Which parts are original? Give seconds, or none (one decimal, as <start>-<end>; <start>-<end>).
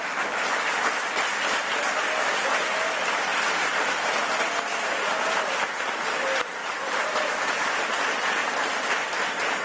0.0-3.3; 3.9-6.6; 7.1-8.4; 9.2-9.6